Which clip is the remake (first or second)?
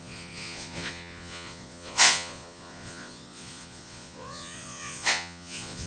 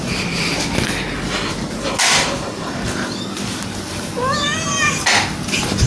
first